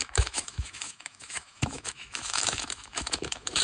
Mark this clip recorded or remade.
remade